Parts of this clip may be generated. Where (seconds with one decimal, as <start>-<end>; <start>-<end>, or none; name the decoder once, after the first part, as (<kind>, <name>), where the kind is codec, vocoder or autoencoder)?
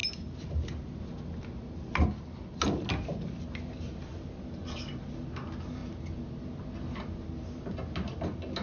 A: none